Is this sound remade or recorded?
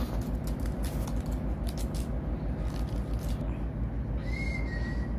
recorded